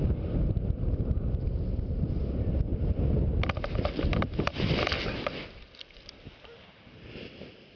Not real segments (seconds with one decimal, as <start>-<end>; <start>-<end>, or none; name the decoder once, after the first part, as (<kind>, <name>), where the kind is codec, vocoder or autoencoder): none

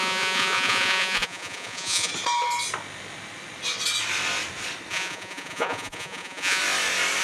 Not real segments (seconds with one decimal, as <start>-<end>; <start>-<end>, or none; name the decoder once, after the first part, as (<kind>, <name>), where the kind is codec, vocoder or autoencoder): 0.0-2.1 (vocoder, Vocos); 4.9-6.6

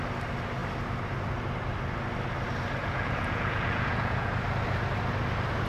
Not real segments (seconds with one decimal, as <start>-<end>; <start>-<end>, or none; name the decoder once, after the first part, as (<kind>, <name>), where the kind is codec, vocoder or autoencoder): 2.8-4.3 (vocoder, Vocos)

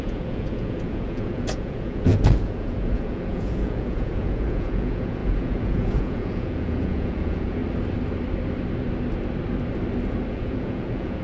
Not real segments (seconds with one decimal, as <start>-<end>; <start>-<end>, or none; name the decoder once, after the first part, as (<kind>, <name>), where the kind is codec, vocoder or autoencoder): 0.0-7.6 (vocoder, Vocos); 10.3-11.2

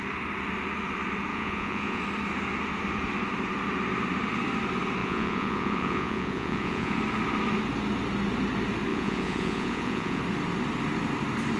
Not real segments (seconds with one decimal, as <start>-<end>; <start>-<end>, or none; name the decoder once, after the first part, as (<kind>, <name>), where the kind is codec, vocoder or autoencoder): 1.3-2.0 (vocoder, Vocos); 5.0-7.0; 8.9-10.2

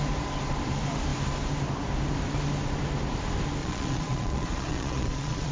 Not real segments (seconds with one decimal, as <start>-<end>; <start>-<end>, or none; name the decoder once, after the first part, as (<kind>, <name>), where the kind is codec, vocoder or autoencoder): 3.6-5.5 (vocoder, Vocos)

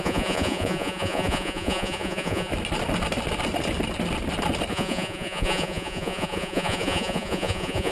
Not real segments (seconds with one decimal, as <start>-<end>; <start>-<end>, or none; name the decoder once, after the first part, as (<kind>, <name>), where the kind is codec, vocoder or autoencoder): 0.0-2.5 (vocoder, Vocos); 4.7-7.9

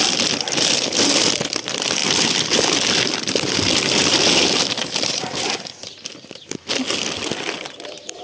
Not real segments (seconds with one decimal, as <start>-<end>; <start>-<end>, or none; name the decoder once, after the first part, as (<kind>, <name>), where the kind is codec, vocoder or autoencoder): none